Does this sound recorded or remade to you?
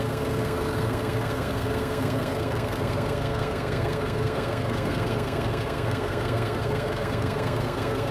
remade